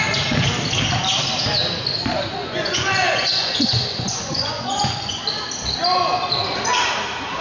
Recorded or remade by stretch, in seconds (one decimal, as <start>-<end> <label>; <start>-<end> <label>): 0.0-2.4 recorded; 2.4-5.2 remade; 5.2-7.4 recorded